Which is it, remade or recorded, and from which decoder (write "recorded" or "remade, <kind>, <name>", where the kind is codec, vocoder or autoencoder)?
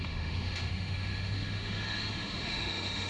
remade, autoencoder, DAC-VAE